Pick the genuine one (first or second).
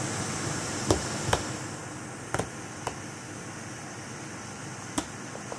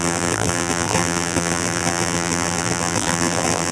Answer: first